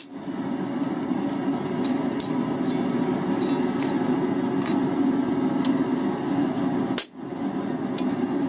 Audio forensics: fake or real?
real